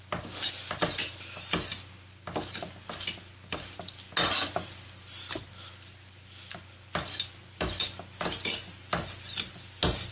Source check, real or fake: real